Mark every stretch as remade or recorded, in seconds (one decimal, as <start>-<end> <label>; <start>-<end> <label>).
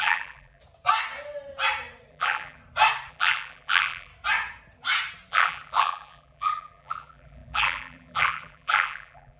0.0-0.6 remade; 0.6-2.1 recorded; 2.1-2.6 remade; 2.6-3.1 recorded; 3.1-4.1 remade; 4.1-5.3 recorded; 5.3-9.4 remade